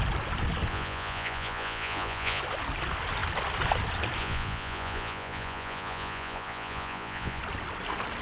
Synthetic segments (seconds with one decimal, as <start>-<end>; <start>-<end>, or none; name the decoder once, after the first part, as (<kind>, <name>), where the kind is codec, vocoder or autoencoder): 0.7-2.4 (vocoder, Vocos); 4.2-7.4

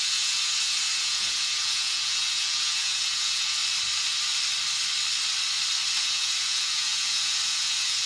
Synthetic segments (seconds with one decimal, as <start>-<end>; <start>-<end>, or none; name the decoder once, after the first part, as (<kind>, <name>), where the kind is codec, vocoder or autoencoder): 0.0-3.6 (vocoder, Vocos); 5.9-8.1

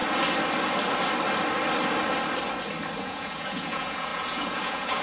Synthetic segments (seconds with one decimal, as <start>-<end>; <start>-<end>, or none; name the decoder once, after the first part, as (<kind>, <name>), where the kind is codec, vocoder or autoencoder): 3.0-5.0 (vocoder, Vocos)

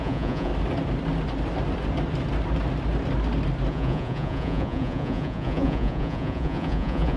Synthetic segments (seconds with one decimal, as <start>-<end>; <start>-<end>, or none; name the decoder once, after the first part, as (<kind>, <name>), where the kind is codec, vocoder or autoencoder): 0.0-0.5 (vocoder, Vocos); 3.7-7.2

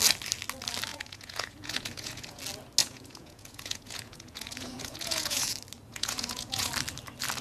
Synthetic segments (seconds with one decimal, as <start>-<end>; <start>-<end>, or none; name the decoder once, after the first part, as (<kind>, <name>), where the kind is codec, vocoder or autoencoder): 0.9-2.4 (vocoder, Vocos); 2.8-5.4; 5.9-6.7

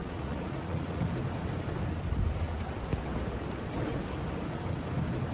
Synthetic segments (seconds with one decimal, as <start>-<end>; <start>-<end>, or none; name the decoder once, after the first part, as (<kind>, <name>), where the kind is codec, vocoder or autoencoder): 0.0-1.1 (vocoder, Vocos)

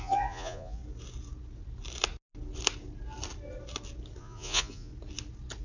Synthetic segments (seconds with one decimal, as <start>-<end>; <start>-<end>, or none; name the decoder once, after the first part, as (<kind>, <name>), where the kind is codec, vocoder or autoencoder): 0.0-0.8 (vocoder, Vocos); 4.2-4.9